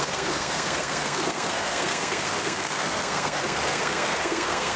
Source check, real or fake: fake